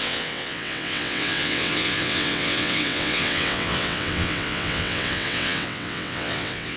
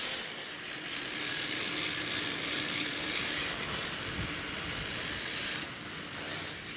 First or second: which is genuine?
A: second